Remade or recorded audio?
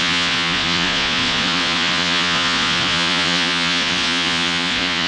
remade